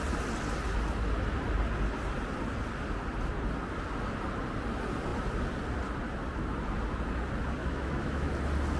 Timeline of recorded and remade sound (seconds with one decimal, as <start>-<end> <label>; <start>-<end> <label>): 0.0-7.6 recorded; 7.6-8.3 remade; 8.3-8.8 recorded

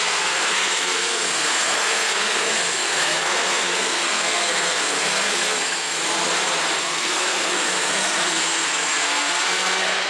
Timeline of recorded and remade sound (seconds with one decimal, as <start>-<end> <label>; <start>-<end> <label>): 0.0-6.0 remade; 6.0-6.8 recorded; 6.8-10.1 remade